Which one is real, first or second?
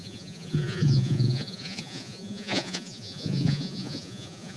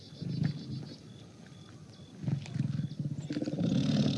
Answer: second